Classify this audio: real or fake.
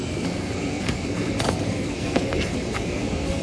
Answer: fake